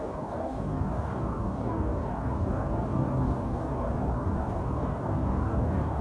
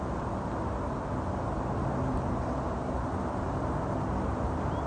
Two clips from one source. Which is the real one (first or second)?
second